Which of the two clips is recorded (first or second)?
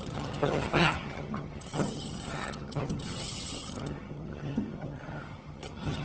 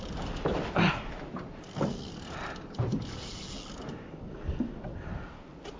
second